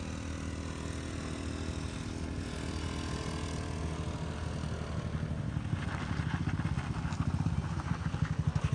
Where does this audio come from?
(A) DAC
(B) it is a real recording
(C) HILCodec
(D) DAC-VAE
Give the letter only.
B